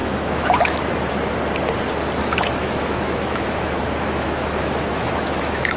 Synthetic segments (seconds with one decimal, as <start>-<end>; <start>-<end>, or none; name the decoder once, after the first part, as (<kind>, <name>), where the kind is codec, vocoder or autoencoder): 0.0-0.8 (autoencoder, DAC-VAE); 2.2-5.8